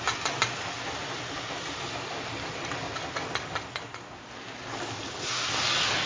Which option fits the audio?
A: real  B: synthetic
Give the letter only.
A